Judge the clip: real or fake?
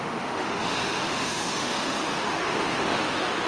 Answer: fake